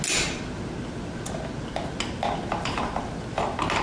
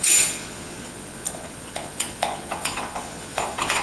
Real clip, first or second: first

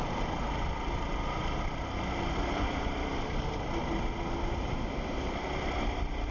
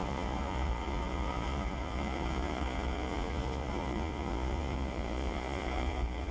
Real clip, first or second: first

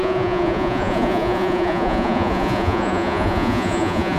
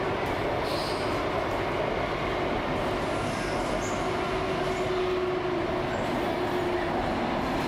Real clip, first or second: second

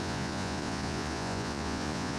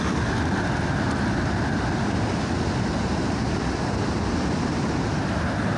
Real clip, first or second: second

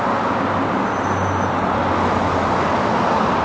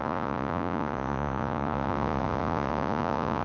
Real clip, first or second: first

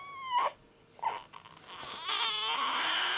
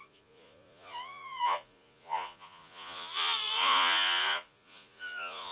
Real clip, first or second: first